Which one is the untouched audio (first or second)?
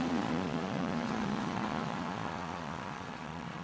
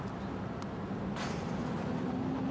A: second